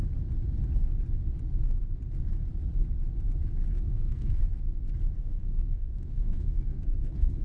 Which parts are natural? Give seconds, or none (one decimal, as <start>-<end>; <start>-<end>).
0.0-3.7; 4.4-5.2